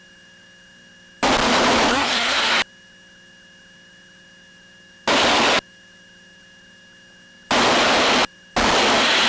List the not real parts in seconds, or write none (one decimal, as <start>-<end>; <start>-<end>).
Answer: 1.9-2.5